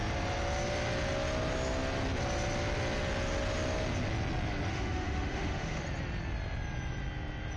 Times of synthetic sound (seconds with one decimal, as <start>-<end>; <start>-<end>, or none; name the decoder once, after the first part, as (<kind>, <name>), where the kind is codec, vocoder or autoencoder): 4.7-5.8 (autoencoder, DAC-VAE)